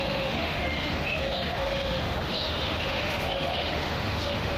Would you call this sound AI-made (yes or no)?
yes